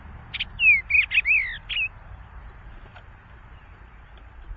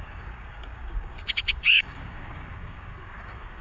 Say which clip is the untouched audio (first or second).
first